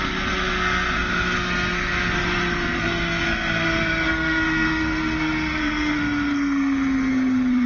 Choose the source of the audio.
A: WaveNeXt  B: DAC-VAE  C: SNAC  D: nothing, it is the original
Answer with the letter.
C